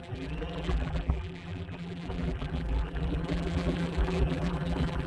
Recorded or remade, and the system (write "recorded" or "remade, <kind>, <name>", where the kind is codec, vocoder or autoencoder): remade, vocoder, BigVGAN v2